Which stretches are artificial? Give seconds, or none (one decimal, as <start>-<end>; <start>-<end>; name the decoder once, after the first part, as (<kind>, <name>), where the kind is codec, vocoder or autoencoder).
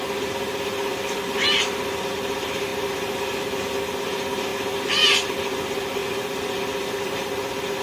none